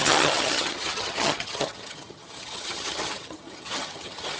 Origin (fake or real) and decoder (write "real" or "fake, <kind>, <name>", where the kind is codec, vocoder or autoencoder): fake, vocoder, HiFi-GAN